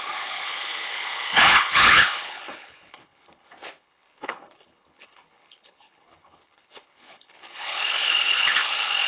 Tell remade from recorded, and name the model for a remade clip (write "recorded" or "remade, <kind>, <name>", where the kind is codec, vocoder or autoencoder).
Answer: remade, codec, HILCodec